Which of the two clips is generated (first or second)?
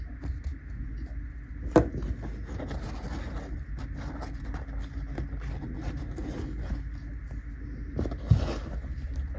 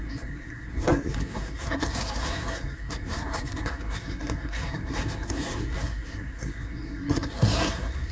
second